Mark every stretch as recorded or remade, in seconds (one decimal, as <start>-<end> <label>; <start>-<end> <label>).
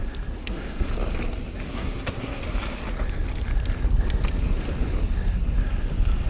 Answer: 0.0-0.5 recorded; 0.5-0.9 remade; 0.9-1.6 recorded; 1.6-2.4 remade; 2.4-6.3 recorded